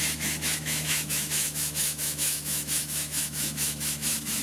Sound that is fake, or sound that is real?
fake